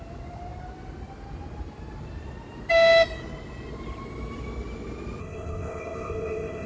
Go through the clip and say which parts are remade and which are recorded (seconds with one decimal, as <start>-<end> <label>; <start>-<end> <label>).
0.0-5.2 recorded; 5.2-6.7 remade